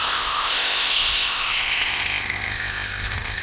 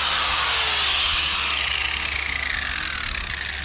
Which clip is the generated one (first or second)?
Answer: first